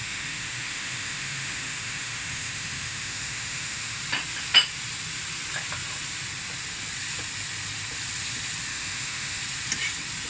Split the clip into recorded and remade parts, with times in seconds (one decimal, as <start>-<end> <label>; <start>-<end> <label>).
0.0-4.0 remade; 4.0-8.7 recorded; 8.7-9.4 remade; 9.4-10.3 recorded